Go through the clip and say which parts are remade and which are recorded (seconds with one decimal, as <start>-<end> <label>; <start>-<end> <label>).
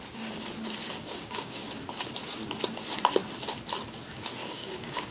0.0-0.8 recorded; 0.8-1.8 remade; 1.8-4.4 recorded; 4.4-5.1 remade